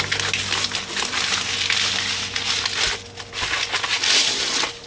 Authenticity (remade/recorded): recorded